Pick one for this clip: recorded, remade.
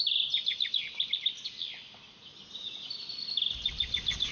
recorded